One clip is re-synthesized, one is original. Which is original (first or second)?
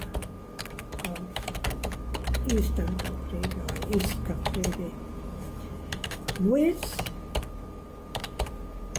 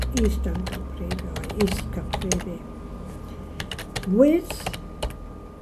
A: second